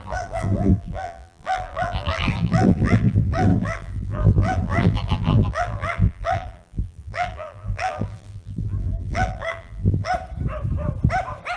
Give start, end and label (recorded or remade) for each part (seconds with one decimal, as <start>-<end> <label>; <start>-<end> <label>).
0.0-10.1 remade; 10.1-11.6 recorded